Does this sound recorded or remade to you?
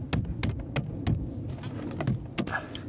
recorded